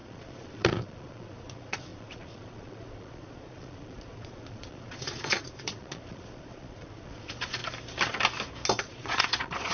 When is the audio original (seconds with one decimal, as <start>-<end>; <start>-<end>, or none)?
7.6-8.8